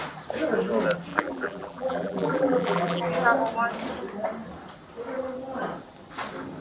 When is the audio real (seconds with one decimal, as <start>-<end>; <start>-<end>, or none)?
0.0-1.1; 3.0-6.6